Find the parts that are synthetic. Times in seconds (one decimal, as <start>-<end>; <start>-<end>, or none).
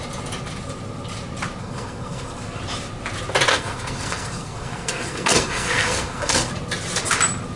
1.6-2.6; 3.5-6.5